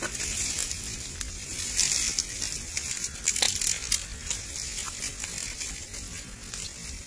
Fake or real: real